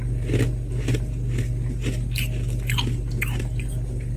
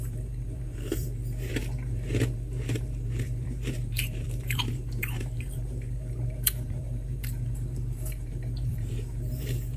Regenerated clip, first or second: second